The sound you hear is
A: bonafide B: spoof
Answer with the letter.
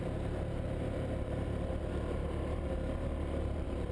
B